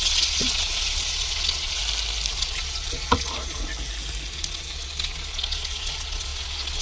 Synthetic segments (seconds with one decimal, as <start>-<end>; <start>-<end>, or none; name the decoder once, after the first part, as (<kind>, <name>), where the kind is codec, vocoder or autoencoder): 0.0-1.8 (vocoder, Vocos); 2.3-3.7; 4.3-6.8